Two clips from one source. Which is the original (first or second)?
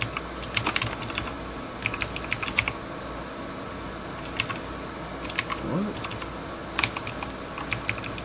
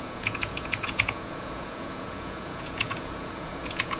first